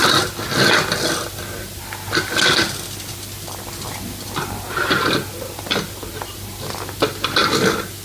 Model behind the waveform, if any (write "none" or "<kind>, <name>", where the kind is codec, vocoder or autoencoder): none